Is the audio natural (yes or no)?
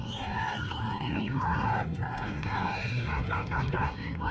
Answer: no